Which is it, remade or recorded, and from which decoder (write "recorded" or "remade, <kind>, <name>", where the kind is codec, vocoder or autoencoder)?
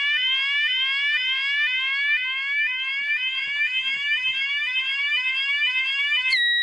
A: remade, autoencoder, DAC-VAE